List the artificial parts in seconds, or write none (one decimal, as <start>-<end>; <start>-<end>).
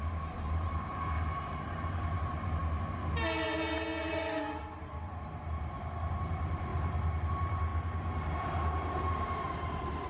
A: 0.0-2.6; 4.1-6.7; 7.3-7.7; 9.1-10.1